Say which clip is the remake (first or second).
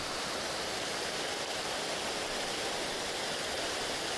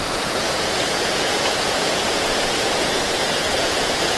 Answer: second